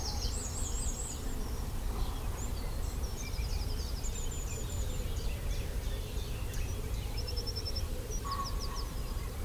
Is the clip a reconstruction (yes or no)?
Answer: yes